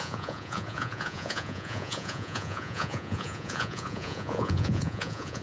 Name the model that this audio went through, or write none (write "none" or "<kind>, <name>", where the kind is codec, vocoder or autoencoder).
vocoder, Vocos